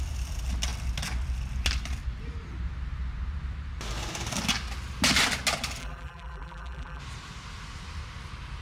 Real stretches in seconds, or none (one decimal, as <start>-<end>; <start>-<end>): 0.0-5.8; 7.0-8.6